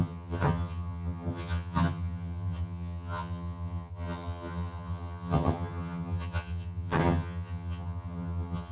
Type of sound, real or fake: fake